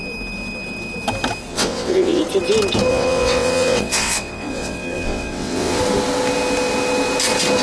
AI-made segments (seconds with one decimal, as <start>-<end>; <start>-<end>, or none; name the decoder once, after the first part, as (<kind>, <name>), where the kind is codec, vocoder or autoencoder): 1.5-2.2 (vocoder, WaveNeXt); 2.9-5.8